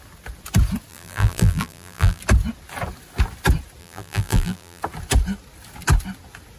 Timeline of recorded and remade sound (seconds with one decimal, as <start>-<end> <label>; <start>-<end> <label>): 0.0-0.9 recorded; 0.9-2.2 remade; 2.2-3.8 recorded; 3.8-4.8 remade; 4.8-6.6 recorded